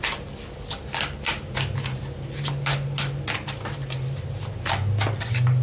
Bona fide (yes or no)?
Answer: yes